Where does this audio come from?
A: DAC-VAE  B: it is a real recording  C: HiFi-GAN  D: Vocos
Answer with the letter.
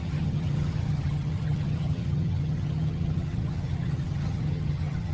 C